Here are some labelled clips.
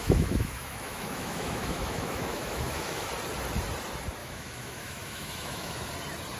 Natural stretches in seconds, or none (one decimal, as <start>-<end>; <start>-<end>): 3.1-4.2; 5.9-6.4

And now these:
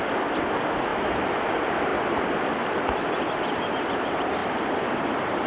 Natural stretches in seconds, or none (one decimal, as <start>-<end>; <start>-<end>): 0.0-5.5

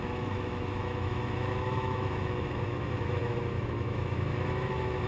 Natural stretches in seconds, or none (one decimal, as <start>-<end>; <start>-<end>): none

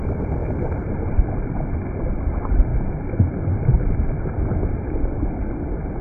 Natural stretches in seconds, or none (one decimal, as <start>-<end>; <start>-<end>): 0.0-6.0